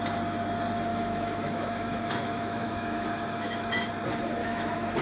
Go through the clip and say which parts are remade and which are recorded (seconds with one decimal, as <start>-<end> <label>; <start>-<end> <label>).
0.0-0.9 recorded; 0.9-3.9 remade; 3.9-4.4 recorded; 4.4-5.0 remade

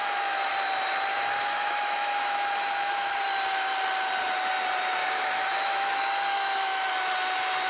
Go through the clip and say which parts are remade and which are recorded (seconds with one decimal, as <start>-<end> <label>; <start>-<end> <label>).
0.0-0.5 remade; 0.5-1.1 recorded; 1.1-3.1 remade; 3.1-5.0 recorded; 5.0-6.9 remade; 6.9-7.7 recorded

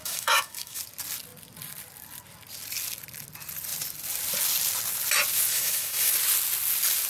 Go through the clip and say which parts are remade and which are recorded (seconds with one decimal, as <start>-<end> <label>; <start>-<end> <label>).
0.0-0.8 remade; 0.8-5.5 recorded; 5.5-6.1 remade; 6.1-7.1 recorded